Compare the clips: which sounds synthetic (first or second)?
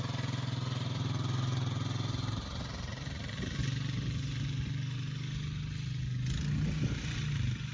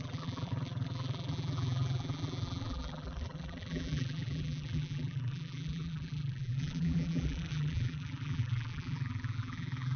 second